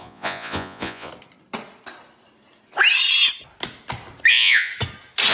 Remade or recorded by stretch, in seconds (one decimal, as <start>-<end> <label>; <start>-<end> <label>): 0.0-1.1 remade; 1.1-4.3 recorded; 4.3-4.7 remade; 4.7-5.3 recorded